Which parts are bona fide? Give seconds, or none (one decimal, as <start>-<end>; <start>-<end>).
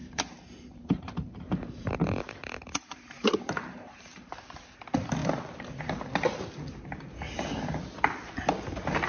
4.3-9.1